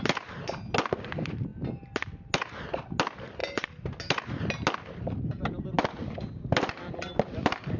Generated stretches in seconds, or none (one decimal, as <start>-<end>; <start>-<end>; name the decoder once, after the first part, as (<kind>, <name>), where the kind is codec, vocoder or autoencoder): none